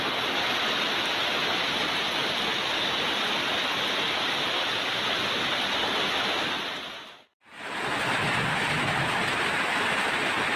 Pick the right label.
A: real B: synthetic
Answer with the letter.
A